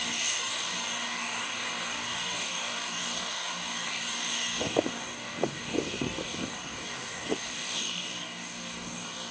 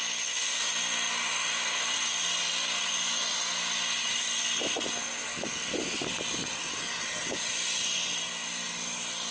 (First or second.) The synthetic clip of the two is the first